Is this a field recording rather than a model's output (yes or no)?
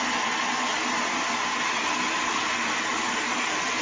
yes